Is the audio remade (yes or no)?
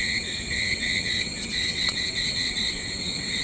yes